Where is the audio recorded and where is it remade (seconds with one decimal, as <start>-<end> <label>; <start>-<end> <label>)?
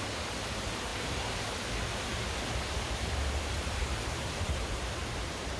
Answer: 0.0-0.9 recorded; 0.9-1.6 remade; 1.6-2.1 recorded; 2.1-5.6 remade